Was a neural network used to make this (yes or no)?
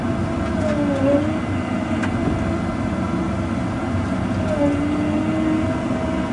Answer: no